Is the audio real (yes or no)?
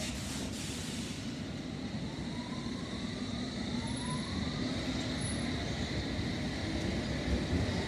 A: no